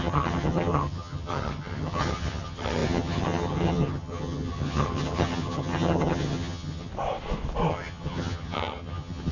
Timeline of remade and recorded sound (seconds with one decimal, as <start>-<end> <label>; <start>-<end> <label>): 0.0-6.9 remade; 6.9-7.7 recorded; 7.7-9.3 remade